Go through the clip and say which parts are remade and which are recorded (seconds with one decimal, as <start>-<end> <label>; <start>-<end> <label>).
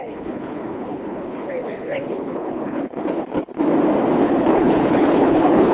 0.0-3.6 remade; 3.6-4.3 recorded; 4.3-5.7 remade